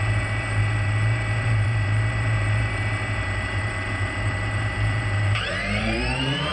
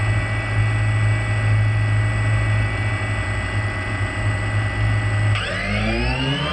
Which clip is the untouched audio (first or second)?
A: second